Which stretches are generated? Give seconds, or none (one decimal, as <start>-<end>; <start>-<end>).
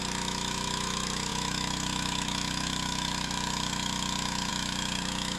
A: 0.0-5.4